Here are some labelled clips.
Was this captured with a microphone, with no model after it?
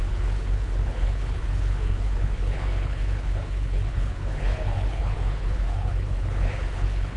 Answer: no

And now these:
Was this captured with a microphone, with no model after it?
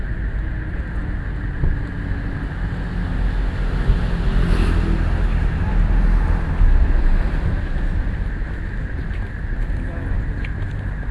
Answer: yes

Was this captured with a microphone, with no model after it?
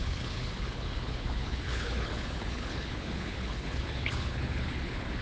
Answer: no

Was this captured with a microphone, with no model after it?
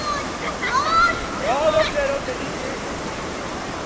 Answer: yes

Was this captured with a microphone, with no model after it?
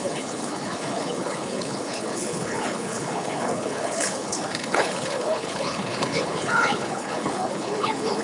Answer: no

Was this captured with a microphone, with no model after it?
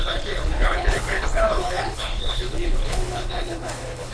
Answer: no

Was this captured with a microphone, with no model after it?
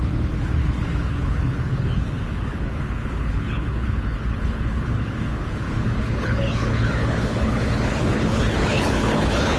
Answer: no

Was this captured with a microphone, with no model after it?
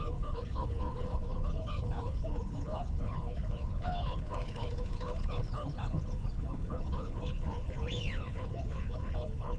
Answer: no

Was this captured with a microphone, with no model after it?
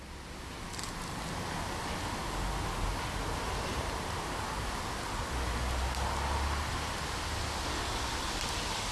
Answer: yes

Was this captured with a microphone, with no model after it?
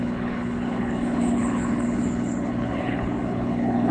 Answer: no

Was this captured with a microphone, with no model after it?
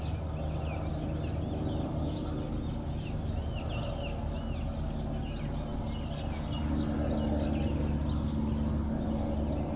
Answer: yes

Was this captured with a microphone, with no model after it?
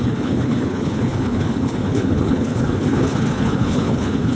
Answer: no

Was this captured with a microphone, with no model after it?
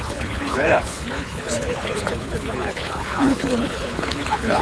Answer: no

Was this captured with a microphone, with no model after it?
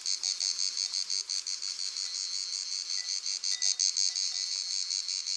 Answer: yes